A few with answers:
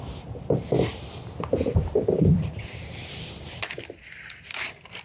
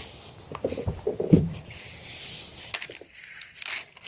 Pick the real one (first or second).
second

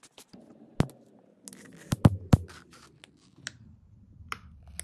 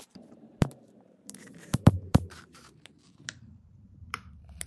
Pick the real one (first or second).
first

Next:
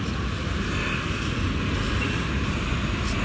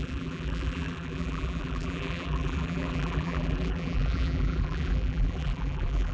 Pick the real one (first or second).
first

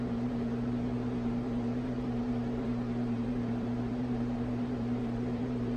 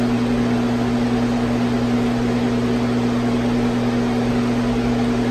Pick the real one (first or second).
second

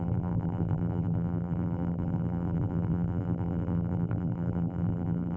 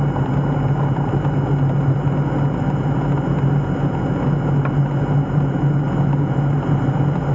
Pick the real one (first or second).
second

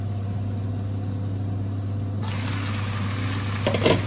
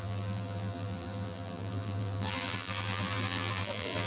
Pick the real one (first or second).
first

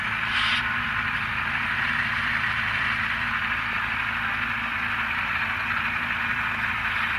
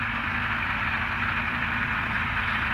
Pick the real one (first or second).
first